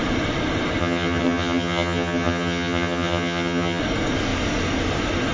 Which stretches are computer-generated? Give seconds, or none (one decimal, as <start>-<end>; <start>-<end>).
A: 0.8-3.8